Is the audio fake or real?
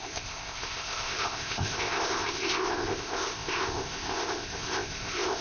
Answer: fake